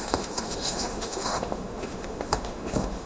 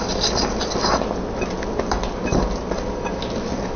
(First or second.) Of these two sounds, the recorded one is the second